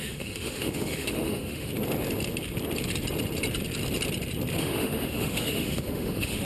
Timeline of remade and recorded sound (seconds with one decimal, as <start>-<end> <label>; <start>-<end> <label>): 0.0-1.7 remade; 1.7-4.6 recorded; 4.6-6.4 remade